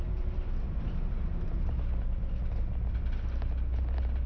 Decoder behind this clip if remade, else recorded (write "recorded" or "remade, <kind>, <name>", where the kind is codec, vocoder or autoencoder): recorded